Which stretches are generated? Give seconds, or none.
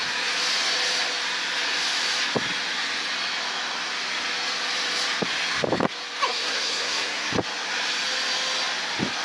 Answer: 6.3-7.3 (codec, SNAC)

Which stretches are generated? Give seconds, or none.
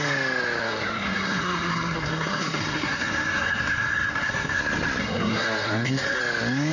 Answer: 0.6-4.6 (codec, SNAC); 5.0-6.2